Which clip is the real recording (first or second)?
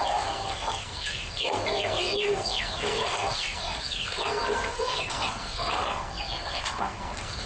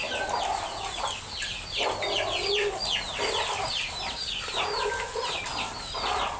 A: second